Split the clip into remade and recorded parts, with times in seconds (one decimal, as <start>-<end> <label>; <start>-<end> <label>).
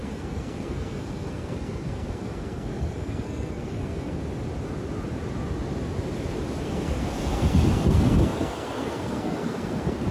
0.0-4.2 remade; 4.2-6.6 recorded; 6.6-10.1 remade